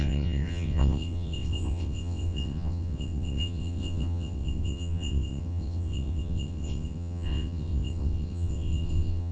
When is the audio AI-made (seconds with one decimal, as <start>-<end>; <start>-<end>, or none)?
0.0-9.3